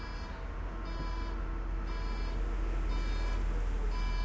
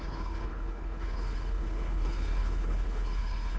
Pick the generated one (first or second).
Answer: second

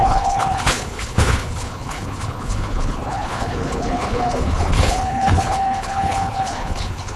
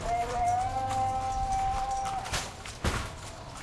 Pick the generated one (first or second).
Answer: first